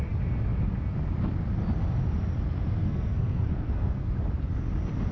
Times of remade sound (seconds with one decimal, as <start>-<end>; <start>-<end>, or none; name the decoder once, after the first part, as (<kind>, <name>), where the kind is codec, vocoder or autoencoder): 2.8-4.1 (codec, SNAC)

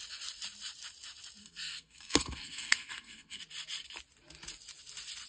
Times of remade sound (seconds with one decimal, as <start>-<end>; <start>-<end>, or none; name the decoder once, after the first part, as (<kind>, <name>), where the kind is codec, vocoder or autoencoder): 1.4-3.4 (codec, SNAC)

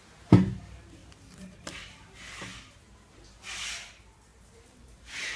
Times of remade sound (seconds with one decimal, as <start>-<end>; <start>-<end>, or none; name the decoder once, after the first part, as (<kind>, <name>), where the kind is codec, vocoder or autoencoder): 1.0-2.1 (vocoder, BigVGAN v2); 4.3-5.4